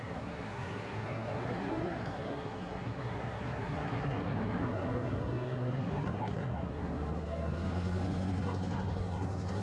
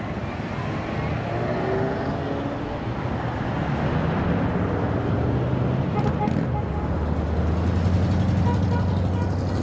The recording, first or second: second